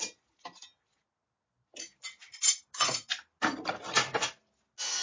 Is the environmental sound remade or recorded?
recorded